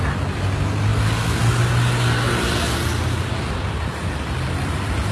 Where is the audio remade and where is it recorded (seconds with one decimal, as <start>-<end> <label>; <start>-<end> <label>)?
0.0-5.1 recorded